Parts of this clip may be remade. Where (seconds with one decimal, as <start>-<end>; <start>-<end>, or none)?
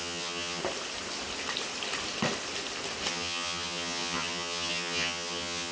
0.0-0.6; 3.1-5.7